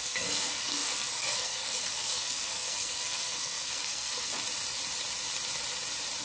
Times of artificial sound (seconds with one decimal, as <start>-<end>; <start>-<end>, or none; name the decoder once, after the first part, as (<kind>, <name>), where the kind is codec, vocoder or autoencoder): 0.0-4.3 (codec, SNAC)